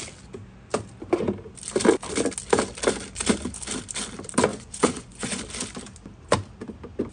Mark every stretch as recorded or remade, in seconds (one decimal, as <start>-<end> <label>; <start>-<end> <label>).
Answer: 0.0-4.5 recorded; 4.5-5.4 remade; 5.4-7.1 recorded